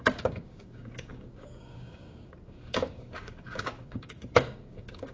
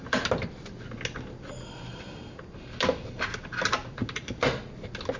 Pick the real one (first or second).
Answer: second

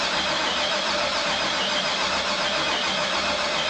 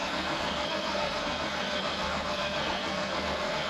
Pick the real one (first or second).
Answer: first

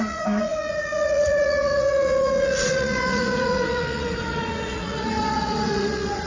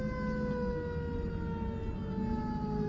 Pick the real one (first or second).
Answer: second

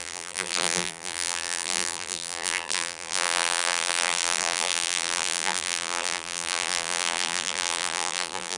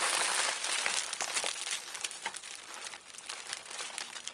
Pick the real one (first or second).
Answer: second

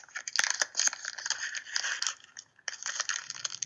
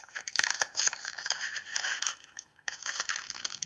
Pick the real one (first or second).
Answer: first